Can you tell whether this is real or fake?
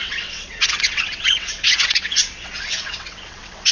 fake